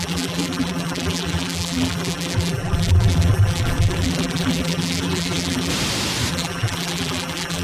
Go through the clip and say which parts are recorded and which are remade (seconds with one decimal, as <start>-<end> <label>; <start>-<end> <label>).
0.0-5.7 remade; 5.7-6.3 recorded; 6.3-7.6 remade